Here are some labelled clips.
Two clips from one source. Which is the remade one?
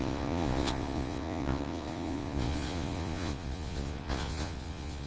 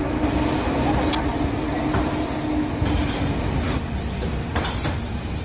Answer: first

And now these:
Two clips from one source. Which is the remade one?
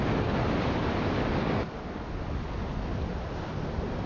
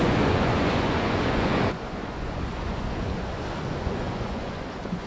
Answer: second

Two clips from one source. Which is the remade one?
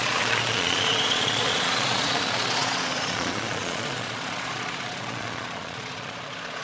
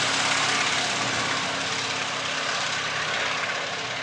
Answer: first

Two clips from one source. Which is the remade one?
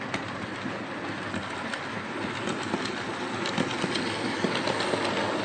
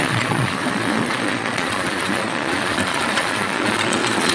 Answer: second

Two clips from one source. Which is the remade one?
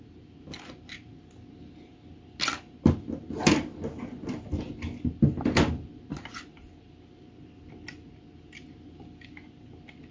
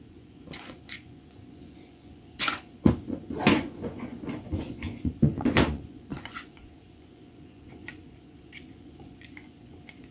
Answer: second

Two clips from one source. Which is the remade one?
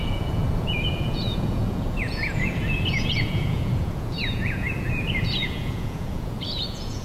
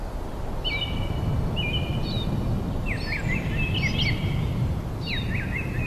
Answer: first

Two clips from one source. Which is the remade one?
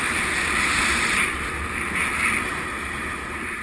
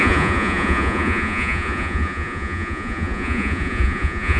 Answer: second